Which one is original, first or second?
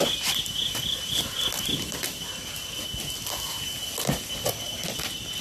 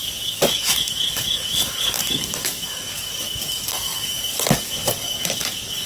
first